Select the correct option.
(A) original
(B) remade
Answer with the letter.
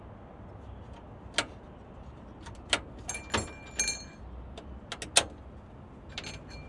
A